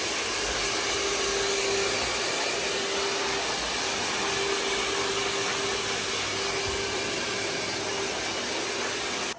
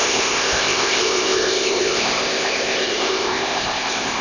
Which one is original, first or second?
first